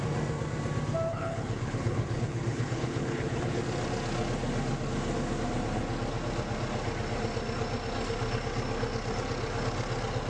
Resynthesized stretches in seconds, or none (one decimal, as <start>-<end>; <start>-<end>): 1.1-3.6